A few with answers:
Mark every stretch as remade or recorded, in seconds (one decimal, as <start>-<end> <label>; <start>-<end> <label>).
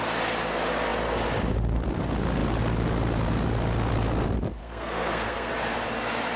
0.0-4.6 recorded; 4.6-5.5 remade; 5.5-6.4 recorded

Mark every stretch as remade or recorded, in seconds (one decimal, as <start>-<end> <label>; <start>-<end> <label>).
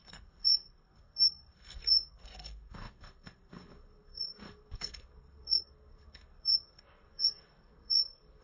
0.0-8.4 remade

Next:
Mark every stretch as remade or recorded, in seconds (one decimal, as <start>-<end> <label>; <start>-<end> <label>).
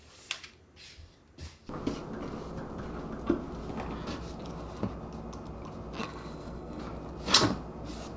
0.0-6.0 recorded; 6.0-6.8 remade; 6.8-8.2 recorded